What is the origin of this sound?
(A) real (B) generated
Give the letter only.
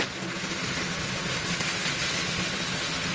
A